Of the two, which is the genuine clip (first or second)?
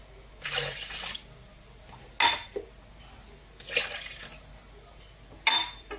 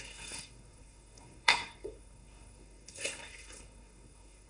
first